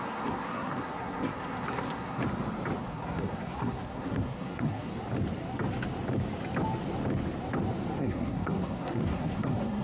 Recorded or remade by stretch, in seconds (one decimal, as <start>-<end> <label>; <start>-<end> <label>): 0.0-2.2 remade; 2.2-2.8 recorded; 2.8-4.9 remade; 4.9-8.0 recorded; 8.0-9.8 remade

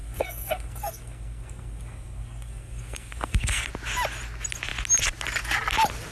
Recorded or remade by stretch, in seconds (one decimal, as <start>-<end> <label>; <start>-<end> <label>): 0.0-3.7 remade; 3.7-6.1 recorded

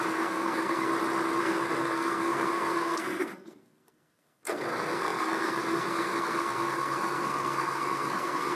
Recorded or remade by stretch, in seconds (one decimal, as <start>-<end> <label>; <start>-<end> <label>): 0.0-0.9 remade; 0.9-1.4 recorded; 1.4-8.6 remade

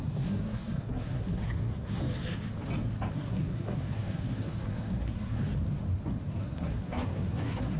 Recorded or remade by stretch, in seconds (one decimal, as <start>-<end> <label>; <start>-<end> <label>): 0.0-2.0 remade; 2.0-3.1 recorded; 3.1-5.4 remade; 5.4-6.4 recorded; 6.4-7.8 remade

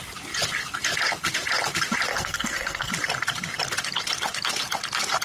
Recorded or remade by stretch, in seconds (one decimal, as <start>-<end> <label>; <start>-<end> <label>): 0.0-2.1 recorded; 2.1-2.9 remade; 2.9-5.2 recorded

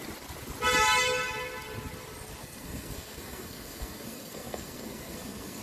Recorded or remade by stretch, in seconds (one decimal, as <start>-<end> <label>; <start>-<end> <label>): 0.0-2.4 recorded; 2.4-5.6 remade

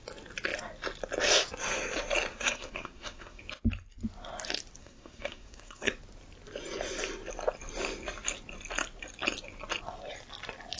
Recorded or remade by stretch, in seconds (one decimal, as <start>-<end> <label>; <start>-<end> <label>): 0.0-2.3 recorded; 2.3-3.4 remade; 3.4-4.8 recorded; 4.8-5.9 remade; 5.9-10.8 recorded